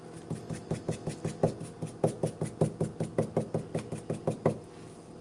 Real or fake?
real